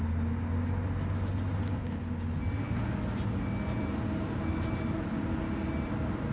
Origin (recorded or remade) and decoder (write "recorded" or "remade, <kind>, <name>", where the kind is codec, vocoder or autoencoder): recorded